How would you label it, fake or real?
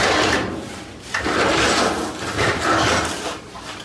real